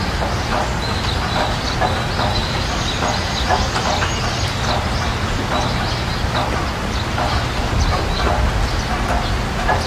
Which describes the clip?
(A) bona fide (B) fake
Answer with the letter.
A